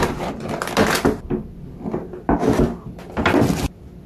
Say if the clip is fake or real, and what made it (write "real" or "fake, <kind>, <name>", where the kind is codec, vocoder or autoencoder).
real